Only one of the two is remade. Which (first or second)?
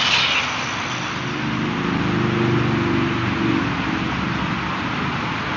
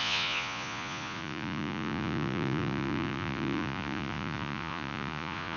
second